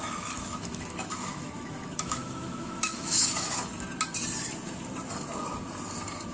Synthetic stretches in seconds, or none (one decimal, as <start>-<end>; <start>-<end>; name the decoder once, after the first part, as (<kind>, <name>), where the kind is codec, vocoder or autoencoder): 0.0-3.7 (autoencoder, DAC-VAE)